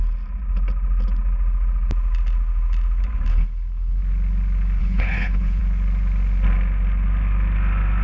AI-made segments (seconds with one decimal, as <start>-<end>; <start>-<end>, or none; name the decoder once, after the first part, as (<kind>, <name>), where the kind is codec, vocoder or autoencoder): 3.3-4.0 (codec, HILCodec); 4.8-5.6